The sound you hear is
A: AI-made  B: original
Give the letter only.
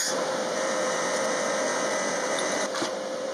A